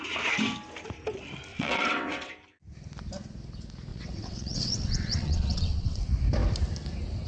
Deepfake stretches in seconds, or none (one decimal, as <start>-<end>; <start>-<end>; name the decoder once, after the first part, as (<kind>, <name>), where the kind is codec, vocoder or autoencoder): 1.5-2.3 (vocoder, WaveNeXt); 3.9-6.0